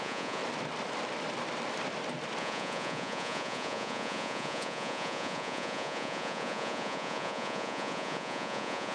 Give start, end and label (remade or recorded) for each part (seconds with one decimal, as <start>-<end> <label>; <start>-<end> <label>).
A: 0.0-0.4 remade; 0.4-2.4 recorded; 2.4-8.9 remade